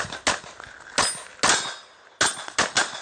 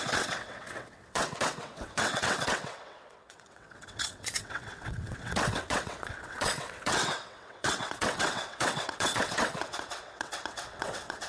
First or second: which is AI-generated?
second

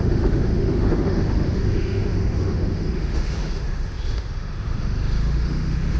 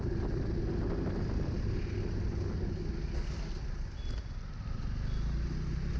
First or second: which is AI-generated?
first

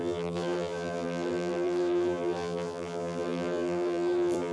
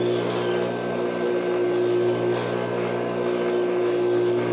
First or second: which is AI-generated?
first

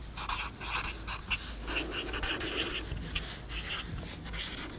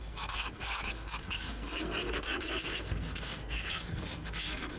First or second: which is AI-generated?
second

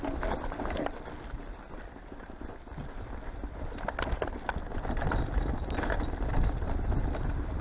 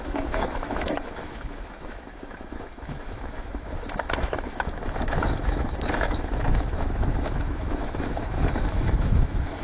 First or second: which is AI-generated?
second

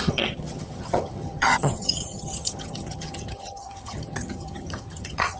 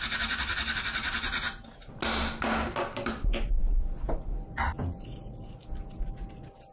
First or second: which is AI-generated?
first